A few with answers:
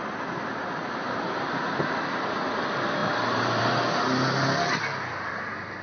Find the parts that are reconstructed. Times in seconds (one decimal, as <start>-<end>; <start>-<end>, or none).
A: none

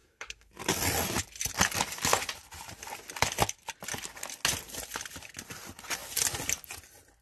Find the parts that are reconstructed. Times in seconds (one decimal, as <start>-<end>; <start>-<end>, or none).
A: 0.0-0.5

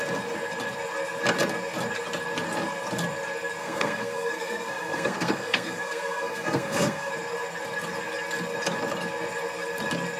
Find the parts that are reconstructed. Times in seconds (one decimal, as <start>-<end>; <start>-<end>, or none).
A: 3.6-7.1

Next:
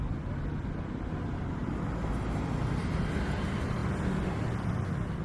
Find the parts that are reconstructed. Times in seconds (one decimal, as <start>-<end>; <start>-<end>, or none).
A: none

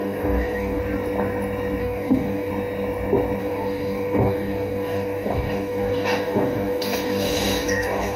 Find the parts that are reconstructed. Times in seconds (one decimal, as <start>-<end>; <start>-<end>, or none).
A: 0.0-0.8; 1.8-2.5; 3.4-8.2

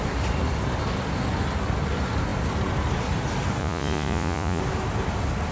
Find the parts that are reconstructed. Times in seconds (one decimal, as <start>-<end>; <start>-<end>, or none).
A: 3.6-4.6

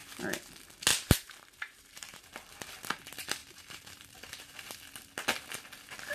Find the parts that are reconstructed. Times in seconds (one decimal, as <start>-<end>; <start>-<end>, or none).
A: 0.9-2.2; 3.4-4.5